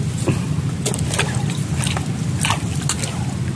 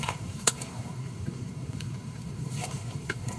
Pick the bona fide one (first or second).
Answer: first